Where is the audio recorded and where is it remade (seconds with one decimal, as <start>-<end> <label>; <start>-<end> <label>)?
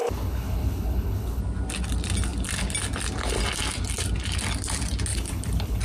0.0-1.4 remade; 1.4-5.1 recorded; 5.1-5.8 remade